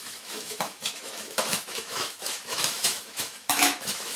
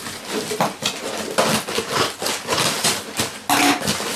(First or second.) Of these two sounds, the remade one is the first